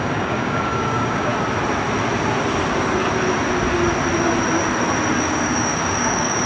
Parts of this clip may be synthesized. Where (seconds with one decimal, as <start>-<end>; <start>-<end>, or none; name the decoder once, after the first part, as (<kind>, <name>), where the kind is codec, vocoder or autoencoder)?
0.0-1.3 (codec, DAC); 5.2-6.5